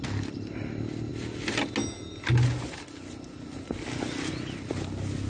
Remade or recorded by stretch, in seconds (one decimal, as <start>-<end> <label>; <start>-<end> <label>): 0.0-5.3 recorded